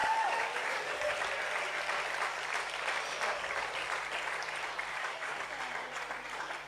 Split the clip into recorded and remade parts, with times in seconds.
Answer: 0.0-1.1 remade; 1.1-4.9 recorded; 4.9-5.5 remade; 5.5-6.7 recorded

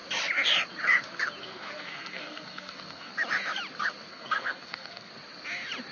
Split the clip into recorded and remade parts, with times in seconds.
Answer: 0.0-1.4 recorded; 1.4-3.1 remade; 3.1-4.1 recorded; 4.1-5.1 remade; 5.1-5.9 recorded

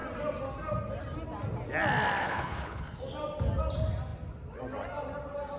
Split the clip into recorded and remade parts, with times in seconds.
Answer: 0.0-2.2 recorded; 2.2-3.0 remade; 3.0-5.6 recorded

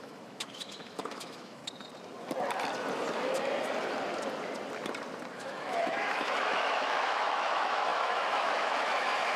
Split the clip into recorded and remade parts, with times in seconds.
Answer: 0.0-1.6 remade; 1.6-5.3 recorded; 5.3-9.4 remade